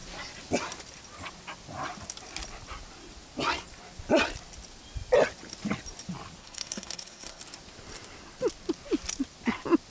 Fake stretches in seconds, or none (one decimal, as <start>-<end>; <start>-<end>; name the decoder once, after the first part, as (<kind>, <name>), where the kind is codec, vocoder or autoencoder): 6.4-7.4 (codec, SNAC)